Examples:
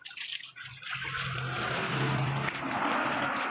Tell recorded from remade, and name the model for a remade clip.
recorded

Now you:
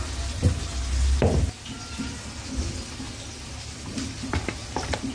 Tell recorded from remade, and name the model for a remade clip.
recorded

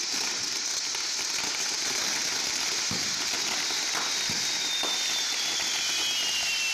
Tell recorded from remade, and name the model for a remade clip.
recorded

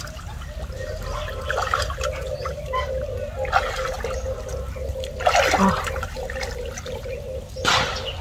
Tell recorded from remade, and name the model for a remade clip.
recorded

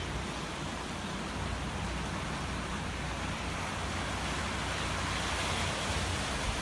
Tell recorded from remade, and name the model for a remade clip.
recorded